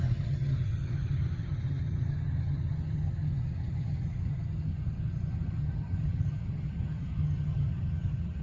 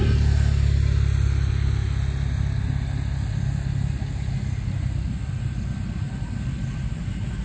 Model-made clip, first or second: first